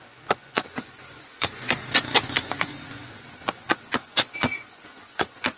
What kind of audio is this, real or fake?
fake